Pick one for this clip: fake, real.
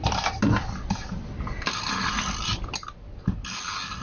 real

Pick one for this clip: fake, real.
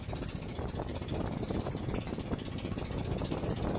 real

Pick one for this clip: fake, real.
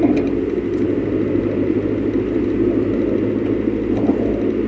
real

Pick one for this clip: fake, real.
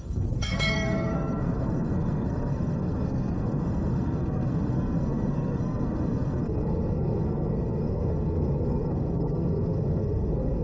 fake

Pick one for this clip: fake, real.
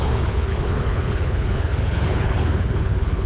fake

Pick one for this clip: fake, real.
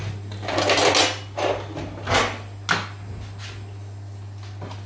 real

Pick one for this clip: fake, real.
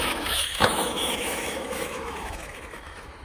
fake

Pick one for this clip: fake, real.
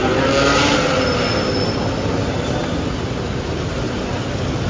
real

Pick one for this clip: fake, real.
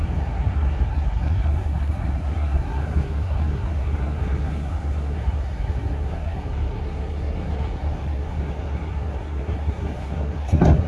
fake